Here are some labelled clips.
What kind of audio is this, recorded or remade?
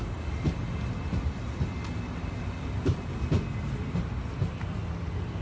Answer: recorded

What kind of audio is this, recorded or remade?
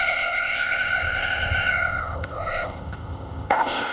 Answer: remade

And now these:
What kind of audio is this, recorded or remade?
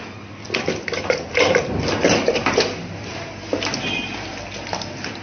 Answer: recorded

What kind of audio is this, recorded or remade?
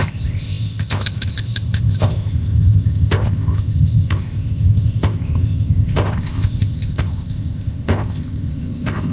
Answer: remade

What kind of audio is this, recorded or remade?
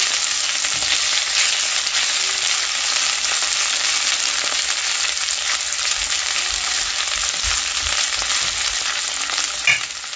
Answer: recorded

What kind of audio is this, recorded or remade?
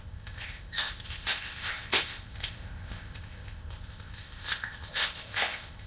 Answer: remade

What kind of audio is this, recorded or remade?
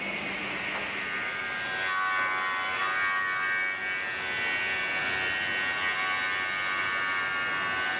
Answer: recorded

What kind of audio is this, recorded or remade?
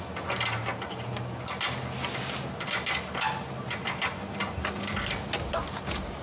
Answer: recorded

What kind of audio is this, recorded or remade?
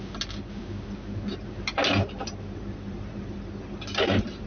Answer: recorded